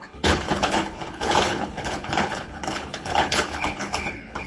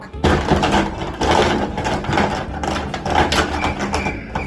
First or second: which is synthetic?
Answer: first